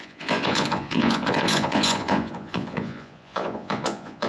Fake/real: fake